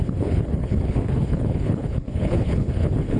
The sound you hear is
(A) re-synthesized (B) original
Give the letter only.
A